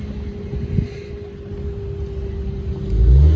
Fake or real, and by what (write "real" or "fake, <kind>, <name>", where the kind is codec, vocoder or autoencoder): real